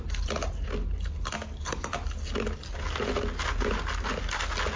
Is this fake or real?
real